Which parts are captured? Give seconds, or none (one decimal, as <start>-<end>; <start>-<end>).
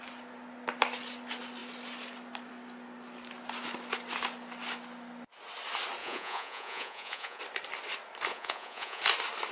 0.0-6.0; 7.4-8.3; 9.0-9.5